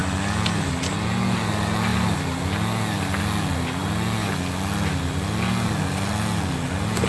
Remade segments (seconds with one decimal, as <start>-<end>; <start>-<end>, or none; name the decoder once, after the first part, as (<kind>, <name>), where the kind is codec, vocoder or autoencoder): none